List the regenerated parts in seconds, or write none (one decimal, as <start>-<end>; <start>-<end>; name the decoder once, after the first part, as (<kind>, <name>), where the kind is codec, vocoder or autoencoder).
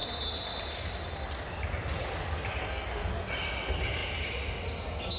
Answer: 2.6-3.1 (codec, DAC)